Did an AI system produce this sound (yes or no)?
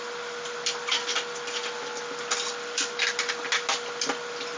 no